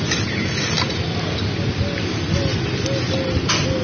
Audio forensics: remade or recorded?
recorded